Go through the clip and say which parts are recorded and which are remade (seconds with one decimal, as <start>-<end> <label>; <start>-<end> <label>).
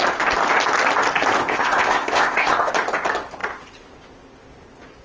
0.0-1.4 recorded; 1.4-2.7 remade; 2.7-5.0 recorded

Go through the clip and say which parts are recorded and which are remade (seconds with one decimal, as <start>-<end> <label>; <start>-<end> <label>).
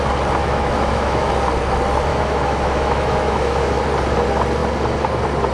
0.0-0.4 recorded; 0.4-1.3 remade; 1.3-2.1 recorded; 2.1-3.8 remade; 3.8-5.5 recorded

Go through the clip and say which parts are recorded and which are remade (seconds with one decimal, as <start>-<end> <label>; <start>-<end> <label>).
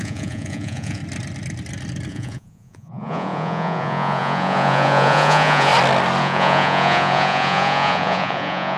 0.0-1.0 remade; 1.0-2.1 recorded; 2.1-5.7 remade; 5.7-6.2 recorded; 6.2-8.8 remade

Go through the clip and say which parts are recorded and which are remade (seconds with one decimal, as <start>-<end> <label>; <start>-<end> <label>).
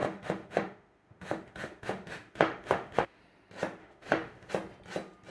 0.0-3.2 remade; 3.2-3.8 recorded; 3.8-4.5 remade; 4.5-5.3 recorded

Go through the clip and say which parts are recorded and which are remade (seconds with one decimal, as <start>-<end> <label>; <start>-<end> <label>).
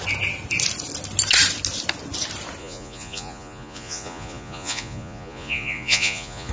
0.0-2.6 recorded; 2.6-6.5 remade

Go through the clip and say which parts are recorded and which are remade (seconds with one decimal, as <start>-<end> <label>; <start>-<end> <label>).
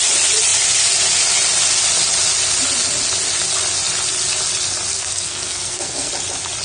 0.0-4.9 recorded; 4.9-6.1 remade; 6.1-6.6 recorded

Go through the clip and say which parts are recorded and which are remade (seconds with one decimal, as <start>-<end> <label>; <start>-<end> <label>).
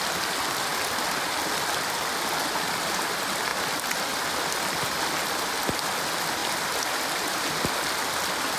0.0-8.6 recorded